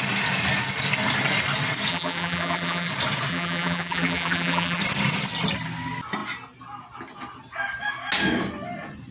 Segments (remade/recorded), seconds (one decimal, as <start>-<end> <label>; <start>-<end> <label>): 0.0-1.9 recorded; 1.9-2.9 remade; 2.9-3.3 recorded; 3.3-4.8 remade; 4.8-9.1 recorded